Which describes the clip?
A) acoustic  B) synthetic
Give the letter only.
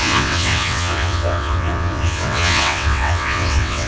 B